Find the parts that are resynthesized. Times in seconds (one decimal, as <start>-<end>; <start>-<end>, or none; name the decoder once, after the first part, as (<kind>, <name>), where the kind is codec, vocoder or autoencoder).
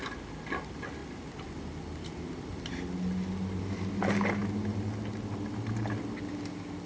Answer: none